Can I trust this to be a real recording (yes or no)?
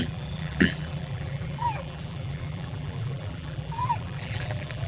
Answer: no